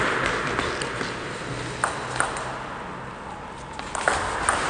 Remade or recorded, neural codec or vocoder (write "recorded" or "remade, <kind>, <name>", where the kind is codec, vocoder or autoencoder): recorded